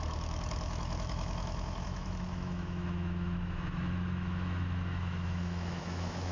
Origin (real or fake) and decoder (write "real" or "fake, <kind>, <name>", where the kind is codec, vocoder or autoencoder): fake, autoencoder, DAC-VAE